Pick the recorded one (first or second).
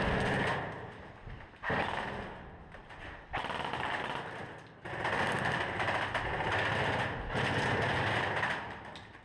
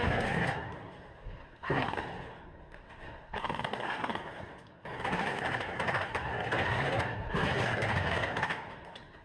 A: first